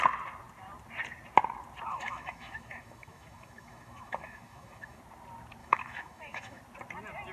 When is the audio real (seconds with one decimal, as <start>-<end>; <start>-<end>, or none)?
0.0-1.9; 5.0-5.6; 6.6-7.3